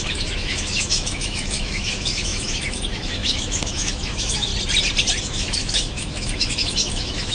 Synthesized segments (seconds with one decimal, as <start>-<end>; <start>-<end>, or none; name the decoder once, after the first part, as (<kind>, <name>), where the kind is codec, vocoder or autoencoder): 0.0-4.5 (autoencoder, DAC-VAE); 5.2-7.3